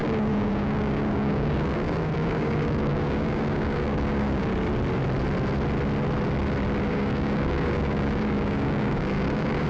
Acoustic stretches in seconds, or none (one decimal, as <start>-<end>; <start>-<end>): 4.5-6.9